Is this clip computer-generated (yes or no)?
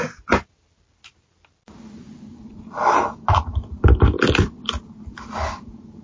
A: no